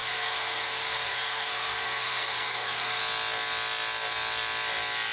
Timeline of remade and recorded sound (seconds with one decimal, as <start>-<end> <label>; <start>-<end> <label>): 0.0-3.0 remade; 3.0-5.1 recorded